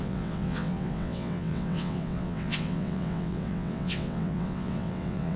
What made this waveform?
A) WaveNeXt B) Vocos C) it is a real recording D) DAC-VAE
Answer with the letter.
A